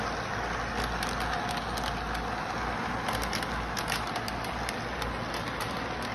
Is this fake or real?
real